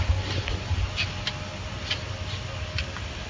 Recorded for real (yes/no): yes